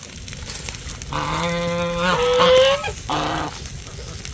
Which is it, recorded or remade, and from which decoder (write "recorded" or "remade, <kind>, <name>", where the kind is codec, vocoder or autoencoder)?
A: recorded